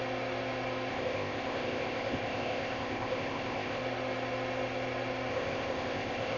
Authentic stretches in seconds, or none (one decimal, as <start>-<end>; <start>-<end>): 0.0-0.9; 3.8-5.3